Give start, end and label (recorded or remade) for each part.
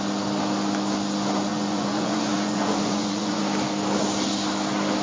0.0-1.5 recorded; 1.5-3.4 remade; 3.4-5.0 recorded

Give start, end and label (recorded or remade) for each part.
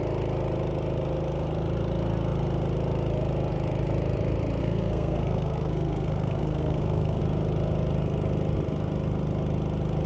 0.0-4.6 recorded; 4.6-7.2 remade; 7.2-10.1 recorded